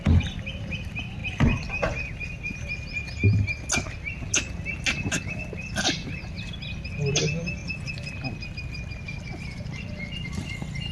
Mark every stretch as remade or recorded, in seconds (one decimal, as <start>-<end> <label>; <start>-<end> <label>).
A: 0.0-10.9 recorded